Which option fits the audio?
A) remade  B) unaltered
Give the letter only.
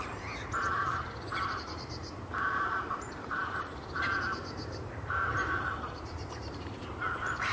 A